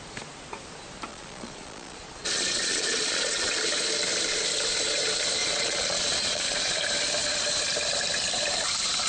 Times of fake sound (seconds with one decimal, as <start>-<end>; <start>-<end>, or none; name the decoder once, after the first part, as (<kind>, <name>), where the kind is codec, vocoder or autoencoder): 1.1-3.5 (vocoder, Vocos); 5.4-6.8